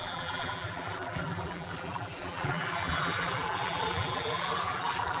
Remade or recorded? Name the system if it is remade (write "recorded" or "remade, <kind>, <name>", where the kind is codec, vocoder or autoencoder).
remade, vocoder, BigVGAN v2